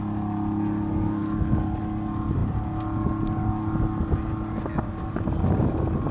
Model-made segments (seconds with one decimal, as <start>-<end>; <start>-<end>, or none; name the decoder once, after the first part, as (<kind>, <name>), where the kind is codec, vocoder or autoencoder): none